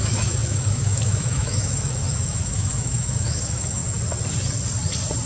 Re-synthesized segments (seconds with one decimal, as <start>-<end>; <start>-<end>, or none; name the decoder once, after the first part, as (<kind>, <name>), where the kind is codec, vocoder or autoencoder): 0.0-3.8 (autoencoder, DAC-VAE)

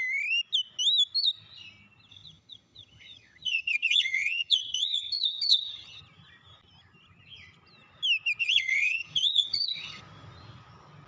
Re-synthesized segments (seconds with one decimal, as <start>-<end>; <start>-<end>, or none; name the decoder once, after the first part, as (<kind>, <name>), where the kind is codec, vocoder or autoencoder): 2.1-6.0 (vocoder, HiFi-GAN); 8.4-10.0

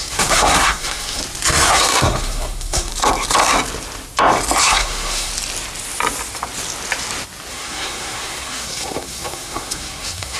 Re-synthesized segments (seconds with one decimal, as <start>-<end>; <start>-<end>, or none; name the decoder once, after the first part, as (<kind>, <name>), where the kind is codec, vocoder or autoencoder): 0.0-1.2 (codec, SNAC); 1.7-2.9; 4.6-5.3; 7.5-10.4

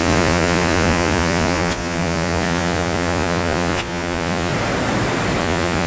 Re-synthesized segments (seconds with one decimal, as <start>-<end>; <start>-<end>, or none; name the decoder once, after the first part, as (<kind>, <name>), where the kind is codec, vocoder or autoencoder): 0.0-4.5 (vocoder, Vocos); 5.4-5.9

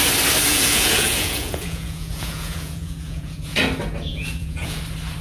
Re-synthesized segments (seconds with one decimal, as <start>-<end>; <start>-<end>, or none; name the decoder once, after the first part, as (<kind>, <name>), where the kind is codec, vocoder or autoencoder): 0.5-3.6 (vocoder, Vocos); 4.1-4.8

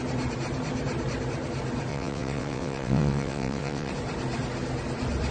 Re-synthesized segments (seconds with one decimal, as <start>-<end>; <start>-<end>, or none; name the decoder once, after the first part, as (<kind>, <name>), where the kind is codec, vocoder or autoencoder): 1.9-3.9 (vocoder, WaveNeXt)

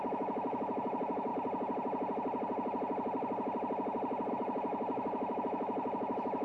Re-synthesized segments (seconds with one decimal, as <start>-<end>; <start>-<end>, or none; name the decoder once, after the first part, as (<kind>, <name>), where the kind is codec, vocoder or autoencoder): 0.0-1.3 (autoencoder, DAC-VAE); 4.3-6.4